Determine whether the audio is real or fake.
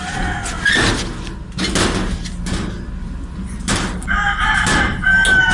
real